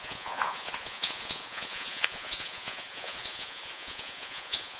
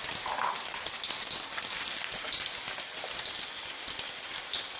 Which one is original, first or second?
second